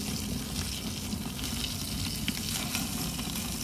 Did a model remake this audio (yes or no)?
no